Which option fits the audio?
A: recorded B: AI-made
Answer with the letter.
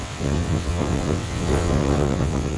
B